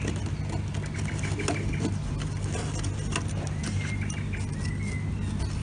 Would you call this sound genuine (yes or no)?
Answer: yes